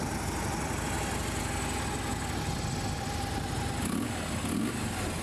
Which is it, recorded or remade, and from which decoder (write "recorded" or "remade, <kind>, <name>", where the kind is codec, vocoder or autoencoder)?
recorded